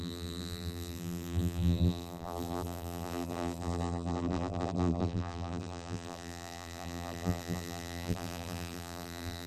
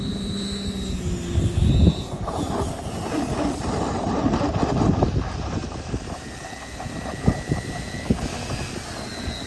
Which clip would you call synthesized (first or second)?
first